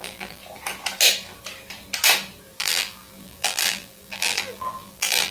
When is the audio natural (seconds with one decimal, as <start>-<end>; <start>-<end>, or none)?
0.4-2.6